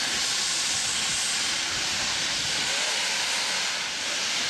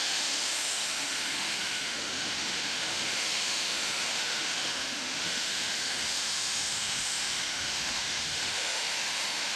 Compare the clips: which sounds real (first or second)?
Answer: first